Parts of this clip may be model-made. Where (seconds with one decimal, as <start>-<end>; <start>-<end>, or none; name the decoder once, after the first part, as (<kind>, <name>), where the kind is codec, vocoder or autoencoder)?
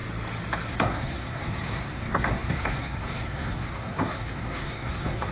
0.7-5.3 (codec, SNAC)